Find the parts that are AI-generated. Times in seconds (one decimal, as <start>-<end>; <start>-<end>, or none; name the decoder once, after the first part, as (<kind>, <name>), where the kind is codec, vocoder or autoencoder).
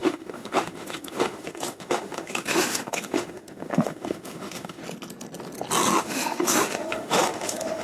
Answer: 0.0-4.8 (autoencoder, DAC-VAE); 6.0-7.8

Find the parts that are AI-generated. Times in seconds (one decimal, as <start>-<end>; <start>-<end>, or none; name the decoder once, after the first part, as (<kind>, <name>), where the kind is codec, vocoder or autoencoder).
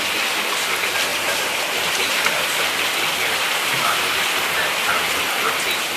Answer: 1.1-4.7 (vocoder, BigVGAN v2)